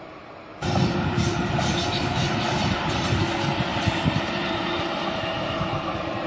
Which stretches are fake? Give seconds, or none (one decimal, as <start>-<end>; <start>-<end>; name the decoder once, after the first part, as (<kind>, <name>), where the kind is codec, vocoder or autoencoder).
0.5-3.2 (vocoder, BigVGAN v2); 3.7-4.3